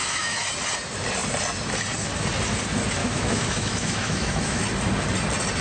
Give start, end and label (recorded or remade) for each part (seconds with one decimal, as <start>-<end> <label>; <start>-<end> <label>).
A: 0.0-0.5 remade; 0.5-3.0 recorded; 3.0-4.6 remade; 4.6-5.6 recorded